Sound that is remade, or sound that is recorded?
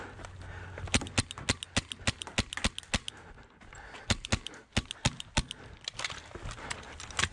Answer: recorded